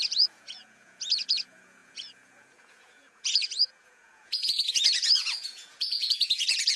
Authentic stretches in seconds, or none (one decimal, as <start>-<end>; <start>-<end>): none